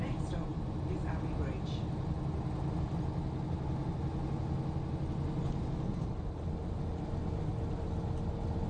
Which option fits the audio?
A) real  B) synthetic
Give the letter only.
A